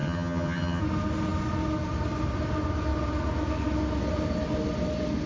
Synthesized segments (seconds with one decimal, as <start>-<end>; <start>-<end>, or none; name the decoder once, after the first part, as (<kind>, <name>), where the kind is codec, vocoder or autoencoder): 0.0-0.8 (vocoder, HiFi-GAN)